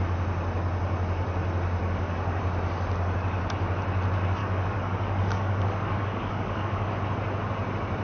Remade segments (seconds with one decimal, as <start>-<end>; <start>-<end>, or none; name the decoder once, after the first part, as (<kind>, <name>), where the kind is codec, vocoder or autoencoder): 1.8-2.4 (codec, DAC); 4.4-7.0